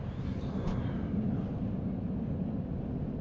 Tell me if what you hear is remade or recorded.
recorded